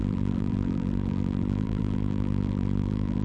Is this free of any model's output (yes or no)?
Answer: no